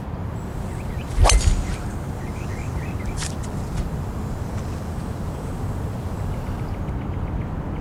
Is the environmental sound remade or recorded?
recorded